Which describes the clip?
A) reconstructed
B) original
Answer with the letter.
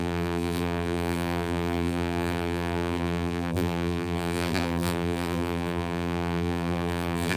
A